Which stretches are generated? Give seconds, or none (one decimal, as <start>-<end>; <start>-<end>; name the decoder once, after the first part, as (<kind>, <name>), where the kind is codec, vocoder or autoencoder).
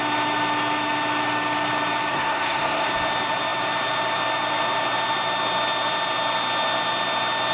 2.1-2.9 (codec, SNAC)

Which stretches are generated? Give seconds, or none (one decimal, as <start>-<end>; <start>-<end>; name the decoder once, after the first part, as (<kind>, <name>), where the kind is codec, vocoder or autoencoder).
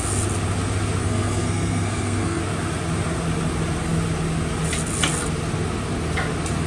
1.0-2.4 (codec, SNAC)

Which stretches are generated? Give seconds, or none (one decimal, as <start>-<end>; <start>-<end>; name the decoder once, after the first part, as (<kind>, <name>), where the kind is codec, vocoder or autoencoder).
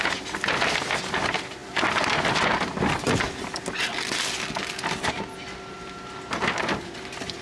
none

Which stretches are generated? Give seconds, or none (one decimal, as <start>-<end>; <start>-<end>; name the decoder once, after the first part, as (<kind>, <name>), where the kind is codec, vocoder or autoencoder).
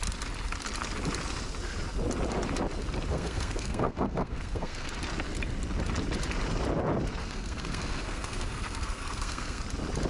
3.1-4.9 (codec, SNAC); 7.2-9.6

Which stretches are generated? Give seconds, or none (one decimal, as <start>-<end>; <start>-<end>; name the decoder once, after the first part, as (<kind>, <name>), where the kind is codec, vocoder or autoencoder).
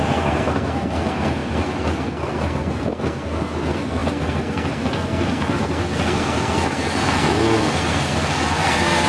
0.0-9.1 (codec, SNAC)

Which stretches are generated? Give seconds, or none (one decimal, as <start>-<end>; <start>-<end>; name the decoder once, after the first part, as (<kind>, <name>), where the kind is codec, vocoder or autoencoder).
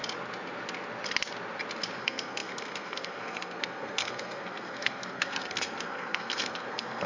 2.0-7.1 (codec, SNAC)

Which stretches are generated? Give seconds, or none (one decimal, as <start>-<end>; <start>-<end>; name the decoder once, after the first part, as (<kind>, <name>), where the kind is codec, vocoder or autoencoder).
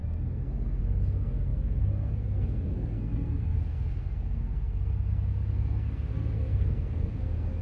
0.0-7.6 (codec, SNAC)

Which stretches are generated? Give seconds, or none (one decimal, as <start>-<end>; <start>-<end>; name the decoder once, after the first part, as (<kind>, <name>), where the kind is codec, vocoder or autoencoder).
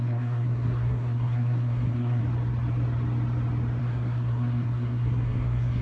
0.0-2.2 (codec, SNAC); 3.8-5.8